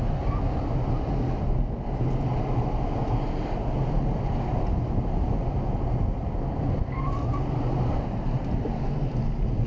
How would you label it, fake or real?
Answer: real